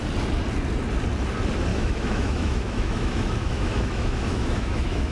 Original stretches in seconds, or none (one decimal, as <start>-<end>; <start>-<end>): 0.0-1.7